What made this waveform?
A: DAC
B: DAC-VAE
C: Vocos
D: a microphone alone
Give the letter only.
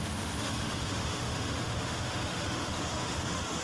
B